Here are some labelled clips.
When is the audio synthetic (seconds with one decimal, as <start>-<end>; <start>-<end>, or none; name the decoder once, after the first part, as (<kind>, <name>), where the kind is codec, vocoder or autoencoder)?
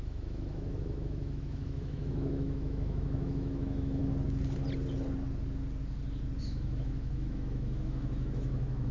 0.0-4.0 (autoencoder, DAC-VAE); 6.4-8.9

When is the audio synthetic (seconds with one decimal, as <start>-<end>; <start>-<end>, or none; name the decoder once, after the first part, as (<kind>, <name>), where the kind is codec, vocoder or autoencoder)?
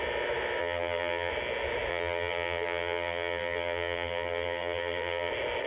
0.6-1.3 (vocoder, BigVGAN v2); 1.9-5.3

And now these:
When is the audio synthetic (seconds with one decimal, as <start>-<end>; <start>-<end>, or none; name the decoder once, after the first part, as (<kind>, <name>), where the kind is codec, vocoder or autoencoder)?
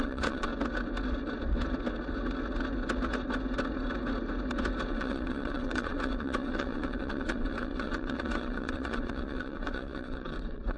0.0-0.5 (vocoder, WaveNeXt); 4.9-10.8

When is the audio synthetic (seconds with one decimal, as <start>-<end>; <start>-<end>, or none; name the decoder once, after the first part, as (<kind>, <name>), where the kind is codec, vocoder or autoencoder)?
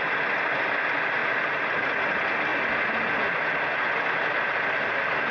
none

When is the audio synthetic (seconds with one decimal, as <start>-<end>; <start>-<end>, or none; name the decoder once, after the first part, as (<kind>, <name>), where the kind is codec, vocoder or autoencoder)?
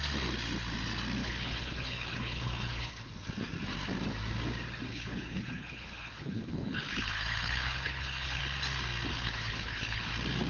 1.2-3.1 (codec, HILCodec); 4.9-8.4; 9.1-10.1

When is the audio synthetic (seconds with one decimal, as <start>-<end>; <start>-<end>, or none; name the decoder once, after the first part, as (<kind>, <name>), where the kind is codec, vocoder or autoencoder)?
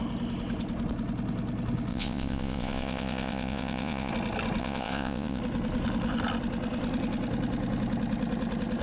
1.9-4.1 (vocoder, Vocos); 4.6-5.4